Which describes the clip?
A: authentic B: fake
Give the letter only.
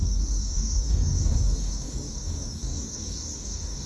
B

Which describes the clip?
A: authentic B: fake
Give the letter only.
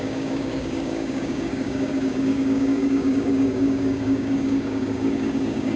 B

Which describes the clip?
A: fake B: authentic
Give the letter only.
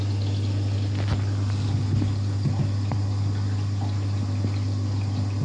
B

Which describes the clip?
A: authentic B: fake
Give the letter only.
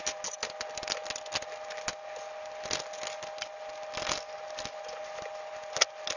A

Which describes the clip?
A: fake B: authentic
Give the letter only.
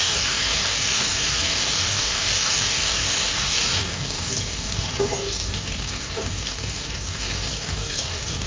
A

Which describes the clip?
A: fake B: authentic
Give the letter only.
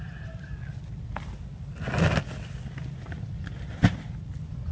B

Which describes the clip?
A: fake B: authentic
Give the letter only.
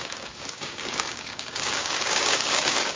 A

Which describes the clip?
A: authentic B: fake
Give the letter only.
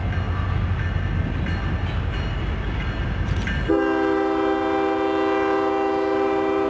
A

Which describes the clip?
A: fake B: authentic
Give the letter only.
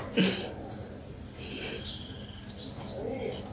B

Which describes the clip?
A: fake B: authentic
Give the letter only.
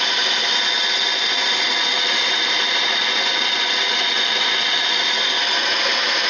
B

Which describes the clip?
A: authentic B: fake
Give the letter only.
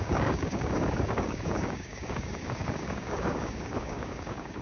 B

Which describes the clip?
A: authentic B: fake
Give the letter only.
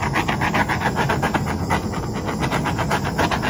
A